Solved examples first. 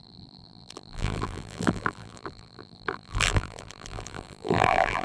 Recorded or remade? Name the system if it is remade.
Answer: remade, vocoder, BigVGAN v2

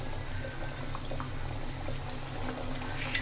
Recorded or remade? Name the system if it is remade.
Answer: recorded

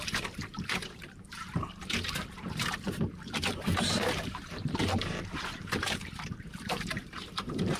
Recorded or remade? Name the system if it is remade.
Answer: remade, vocoder, BigVGAN v2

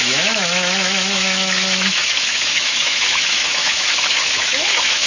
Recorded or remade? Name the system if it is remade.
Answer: remade, autoencoder, DAC-VAE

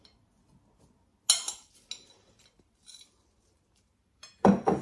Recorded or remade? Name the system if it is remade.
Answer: recorded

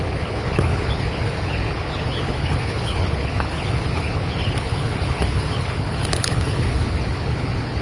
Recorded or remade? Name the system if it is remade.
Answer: remade, codec, HILCodec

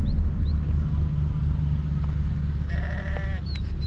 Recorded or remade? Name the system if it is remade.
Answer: recorded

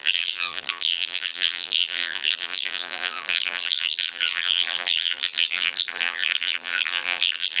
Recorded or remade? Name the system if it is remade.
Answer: remade, vocoder, BigVGAN v2